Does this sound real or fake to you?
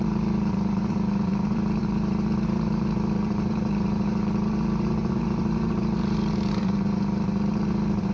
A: fake